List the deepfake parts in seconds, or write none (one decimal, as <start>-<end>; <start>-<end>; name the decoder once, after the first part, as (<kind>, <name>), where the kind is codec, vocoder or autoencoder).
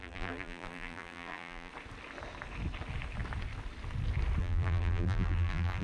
0.0-1.7 (vocoder, BigVGAN v2); 4.4-5.8